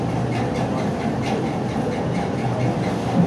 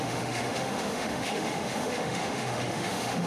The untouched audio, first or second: first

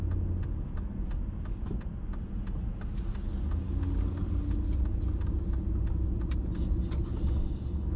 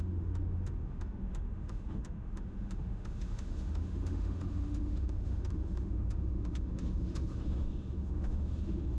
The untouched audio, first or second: first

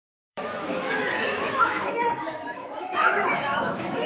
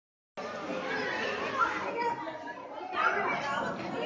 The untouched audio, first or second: second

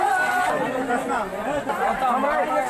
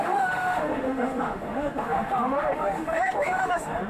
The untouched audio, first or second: first